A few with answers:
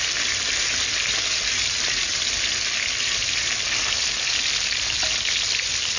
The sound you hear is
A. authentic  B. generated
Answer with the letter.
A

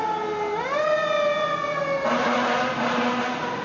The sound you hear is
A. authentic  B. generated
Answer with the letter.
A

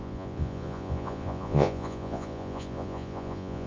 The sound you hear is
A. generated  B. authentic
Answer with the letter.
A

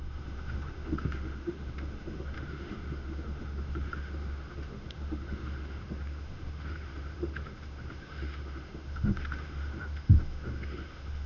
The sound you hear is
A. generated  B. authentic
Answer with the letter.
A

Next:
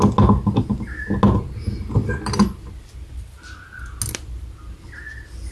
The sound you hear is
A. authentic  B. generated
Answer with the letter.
A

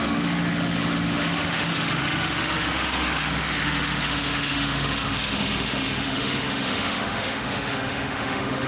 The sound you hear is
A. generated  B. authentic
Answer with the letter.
A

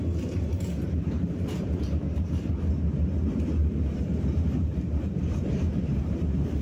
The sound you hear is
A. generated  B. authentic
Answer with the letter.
A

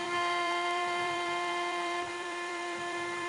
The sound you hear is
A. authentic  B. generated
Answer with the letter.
B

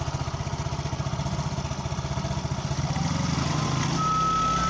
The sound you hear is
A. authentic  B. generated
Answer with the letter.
A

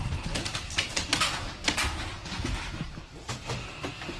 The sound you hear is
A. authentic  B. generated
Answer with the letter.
A